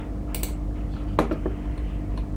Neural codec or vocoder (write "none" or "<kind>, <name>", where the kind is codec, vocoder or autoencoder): none